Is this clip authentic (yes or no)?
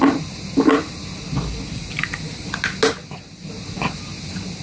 yes